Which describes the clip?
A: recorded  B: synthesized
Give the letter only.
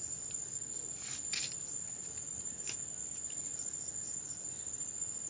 A